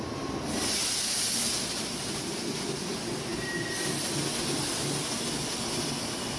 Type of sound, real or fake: real